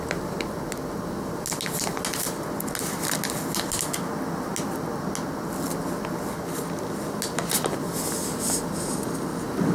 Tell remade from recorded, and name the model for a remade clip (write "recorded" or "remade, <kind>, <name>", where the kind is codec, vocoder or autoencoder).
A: recorded